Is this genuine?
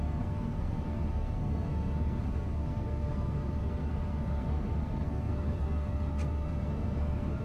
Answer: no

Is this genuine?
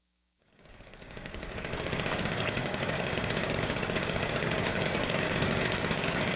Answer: no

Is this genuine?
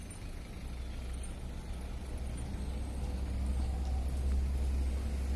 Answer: yes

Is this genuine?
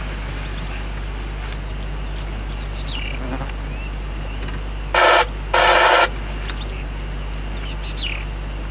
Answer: yes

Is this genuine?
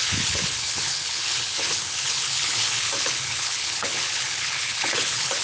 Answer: no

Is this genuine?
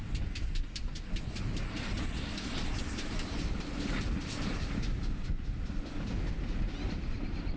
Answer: yes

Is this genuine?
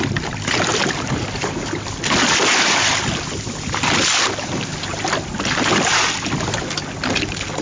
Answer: yes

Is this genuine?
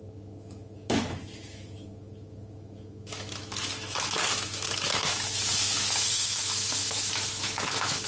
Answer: no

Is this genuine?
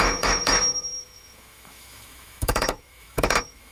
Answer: no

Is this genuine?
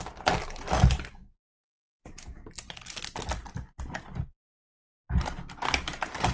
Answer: yes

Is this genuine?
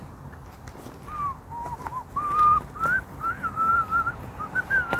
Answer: yes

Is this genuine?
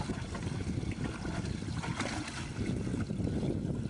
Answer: yes